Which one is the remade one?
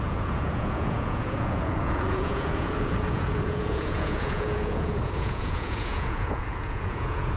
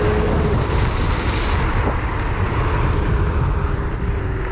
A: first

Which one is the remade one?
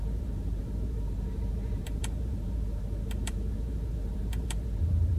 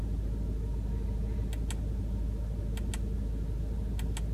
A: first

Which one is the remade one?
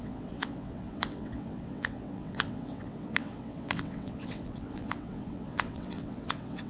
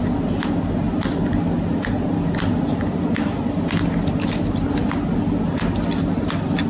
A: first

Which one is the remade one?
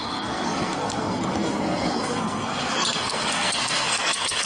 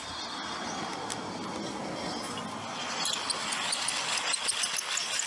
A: first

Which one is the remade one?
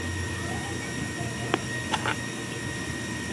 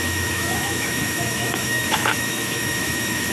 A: second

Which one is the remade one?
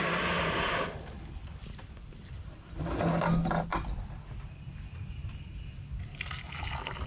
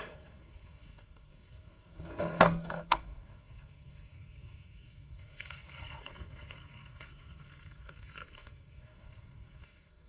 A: second